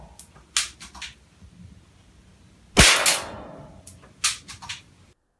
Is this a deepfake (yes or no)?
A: no